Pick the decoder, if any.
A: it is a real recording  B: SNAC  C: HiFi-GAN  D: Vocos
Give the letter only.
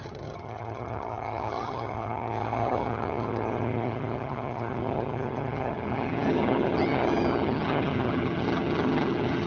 C